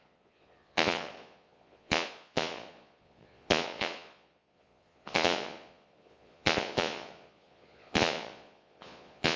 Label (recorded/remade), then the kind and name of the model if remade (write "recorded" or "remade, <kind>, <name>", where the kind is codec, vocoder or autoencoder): remade, vocoder, Vocos